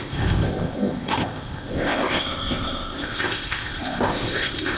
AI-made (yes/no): yes